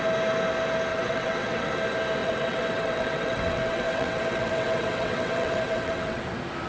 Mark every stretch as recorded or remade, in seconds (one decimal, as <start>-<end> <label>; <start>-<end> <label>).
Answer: 0.0-0.9 recorded; 0.9-1.7 remade; 1.7-2.2 recorded; 2.2-6.2 remade; 6.2-6.7 recorded